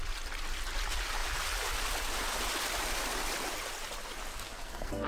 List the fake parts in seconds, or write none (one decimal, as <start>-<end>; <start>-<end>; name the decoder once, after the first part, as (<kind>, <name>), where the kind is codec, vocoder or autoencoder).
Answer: 4.3-5.1 (codec, SNAC)